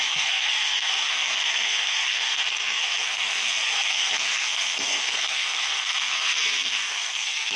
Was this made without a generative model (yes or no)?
no